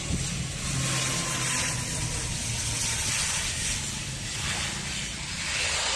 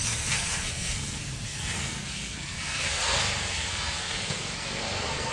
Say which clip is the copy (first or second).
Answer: second